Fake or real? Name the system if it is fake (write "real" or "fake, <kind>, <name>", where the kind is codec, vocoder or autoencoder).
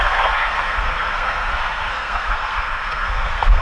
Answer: fake, codec, SNAC